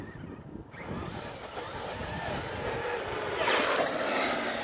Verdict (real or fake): real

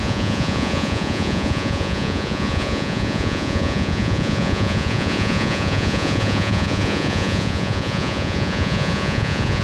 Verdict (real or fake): fake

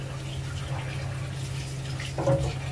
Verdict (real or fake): real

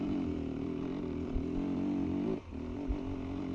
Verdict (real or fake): fake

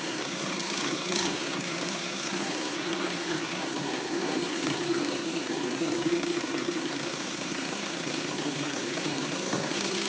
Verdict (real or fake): fake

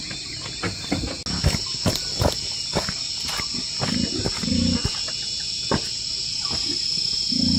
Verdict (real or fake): real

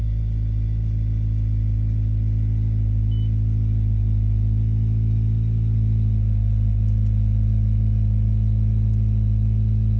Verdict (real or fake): real